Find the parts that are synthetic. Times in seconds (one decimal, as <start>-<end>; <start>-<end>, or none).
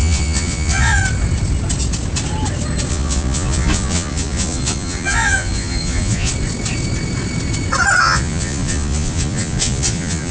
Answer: 0.0-1.0; 2.9-6.3; 8.0-10.3